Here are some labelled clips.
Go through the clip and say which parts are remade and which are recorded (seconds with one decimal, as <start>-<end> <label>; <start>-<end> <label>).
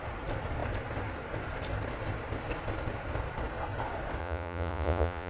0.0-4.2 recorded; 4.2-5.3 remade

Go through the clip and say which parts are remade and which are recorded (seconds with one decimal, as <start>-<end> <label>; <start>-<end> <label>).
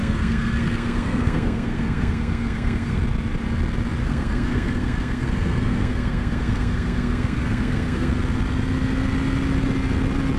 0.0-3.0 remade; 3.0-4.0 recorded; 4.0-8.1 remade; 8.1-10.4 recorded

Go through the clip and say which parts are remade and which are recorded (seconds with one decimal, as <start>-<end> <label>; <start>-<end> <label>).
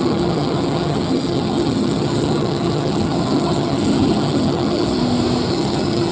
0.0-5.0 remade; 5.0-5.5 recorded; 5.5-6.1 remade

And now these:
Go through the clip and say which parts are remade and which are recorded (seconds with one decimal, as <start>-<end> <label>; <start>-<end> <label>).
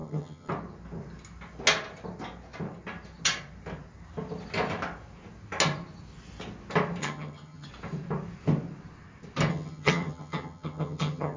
0.0-0.5 remade; 0.5-7.0 recorded; 7.0-7.7 remade; 7.7-9.5 recorded; 9.5-11.4 remade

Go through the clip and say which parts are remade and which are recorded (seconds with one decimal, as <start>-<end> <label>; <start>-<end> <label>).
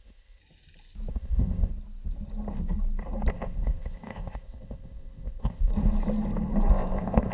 0.0-0.4 remade; 0.4-1.1 recorded; 1.1-1.7 remade; 1.7-3.3 recorded; 3.3-5.7 remade; 5.7-6.7 recorded; 6.7-7.3 remade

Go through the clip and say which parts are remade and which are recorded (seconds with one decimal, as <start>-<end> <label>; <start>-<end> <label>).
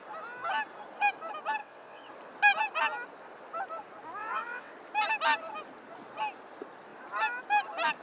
0.0-1.6 recorded; 1.6-2.1 remade; 2.1-4.2 recorded; 4.2-4.7 remade; 4.7-8.0 recorded